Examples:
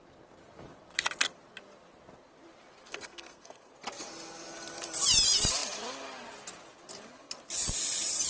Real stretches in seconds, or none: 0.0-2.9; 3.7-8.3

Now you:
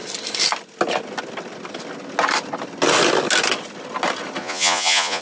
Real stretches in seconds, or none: 0.0-4.4